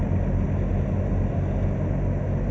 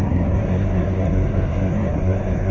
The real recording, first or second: first